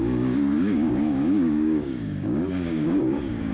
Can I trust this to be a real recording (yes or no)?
no